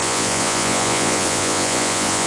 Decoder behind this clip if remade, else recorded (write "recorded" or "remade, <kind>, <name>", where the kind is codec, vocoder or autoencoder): remade, vocoder, Vocos